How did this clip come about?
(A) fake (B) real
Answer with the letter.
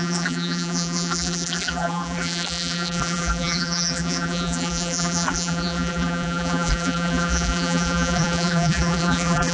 A